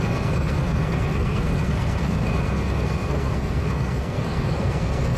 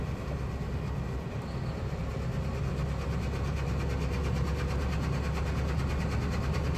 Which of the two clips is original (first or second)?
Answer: second